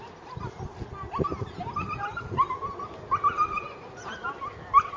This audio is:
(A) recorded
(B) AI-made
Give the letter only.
A